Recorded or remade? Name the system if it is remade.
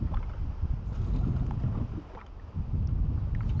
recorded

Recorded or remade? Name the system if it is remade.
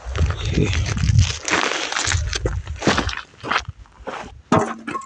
recorded